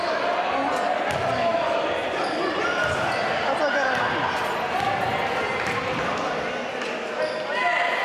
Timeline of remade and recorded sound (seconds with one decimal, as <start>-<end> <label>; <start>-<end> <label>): 0.0-8.0 recorded